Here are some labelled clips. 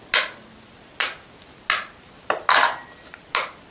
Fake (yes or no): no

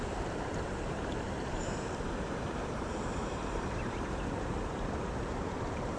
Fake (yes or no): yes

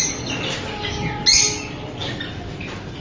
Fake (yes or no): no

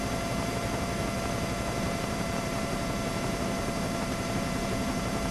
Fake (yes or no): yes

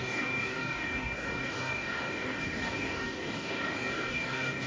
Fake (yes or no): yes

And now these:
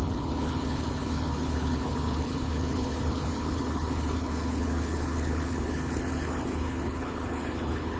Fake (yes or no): yes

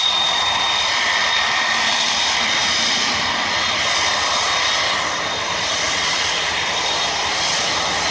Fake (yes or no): yes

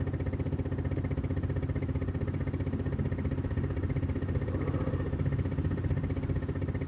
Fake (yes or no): no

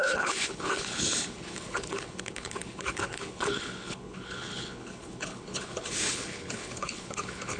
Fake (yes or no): yes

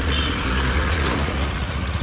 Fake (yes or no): yes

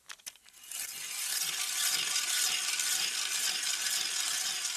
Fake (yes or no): no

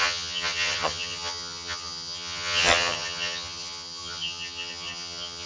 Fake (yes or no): yes